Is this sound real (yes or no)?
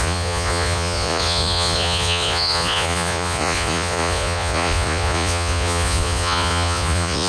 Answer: no